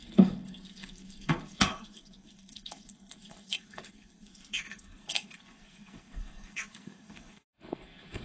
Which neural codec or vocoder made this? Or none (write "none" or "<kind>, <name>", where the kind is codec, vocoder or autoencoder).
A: codec, SNAC